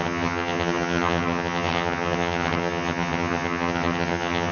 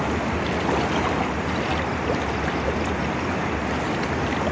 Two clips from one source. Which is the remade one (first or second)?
first